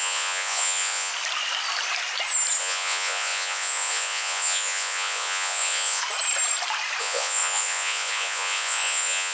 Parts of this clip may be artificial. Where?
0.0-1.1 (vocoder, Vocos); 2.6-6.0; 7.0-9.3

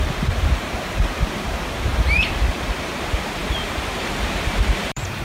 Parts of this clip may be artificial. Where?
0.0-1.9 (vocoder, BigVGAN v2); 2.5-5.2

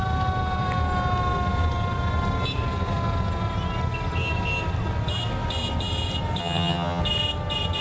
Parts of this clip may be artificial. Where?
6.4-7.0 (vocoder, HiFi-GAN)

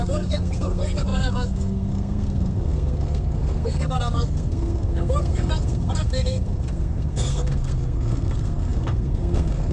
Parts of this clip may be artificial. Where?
0.0-9.7 (codec, SNAC)